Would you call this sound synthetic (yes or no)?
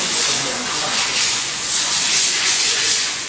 yes